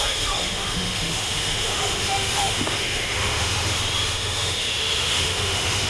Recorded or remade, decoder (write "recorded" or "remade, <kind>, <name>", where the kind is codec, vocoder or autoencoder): remade, autoencoder, DAC-VAE